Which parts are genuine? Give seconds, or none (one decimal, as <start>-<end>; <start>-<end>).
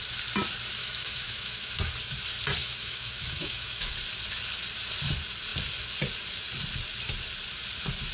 0.0-0.8; 1.8-2.6; 3.9-8.1